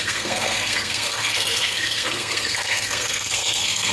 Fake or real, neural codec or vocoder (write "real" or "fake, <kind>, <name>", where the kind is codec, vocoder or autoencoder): fake, codec, SNAC